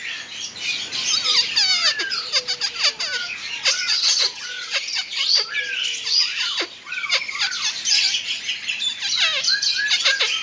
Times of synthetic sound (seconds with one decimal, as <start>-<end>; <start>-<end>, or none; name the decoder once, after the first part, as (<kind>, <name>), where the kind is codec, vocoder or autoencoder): 3.8-4.8 (vocoder, WaveNeXt)